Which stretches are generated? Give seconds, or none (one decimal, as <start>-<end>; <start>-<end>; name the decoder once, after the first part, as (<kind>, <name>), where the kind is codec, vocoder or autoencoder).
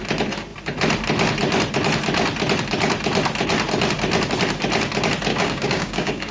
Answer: 5.3-6.3 (codec, DAC)